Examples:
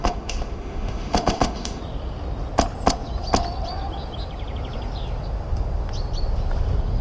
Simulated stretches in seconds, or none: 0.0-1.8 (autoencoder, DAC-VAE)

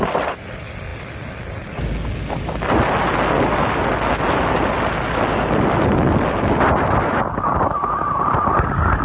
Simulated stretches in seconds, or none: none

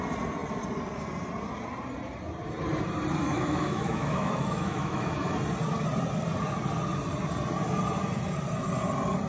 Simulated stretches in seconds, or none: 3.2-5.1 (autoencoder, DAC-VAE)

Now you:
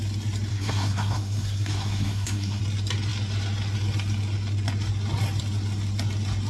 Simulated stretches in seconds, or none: 0.5-2.6 (codec, SNAC)

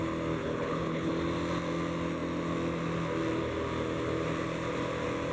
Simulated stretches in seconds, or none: 0.4-1.1 (codec, HILCodec)

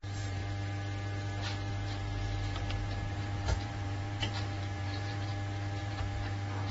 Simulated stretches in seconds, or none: 0.0-0.4 (vocoder, BigVGAN v2); 1.7-5.3; 5.8-6.7

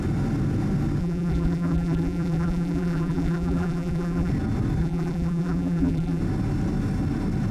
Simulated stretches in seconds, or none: 1.0-4.3 (vocoder, BigVGAN v2); 4.8-6.2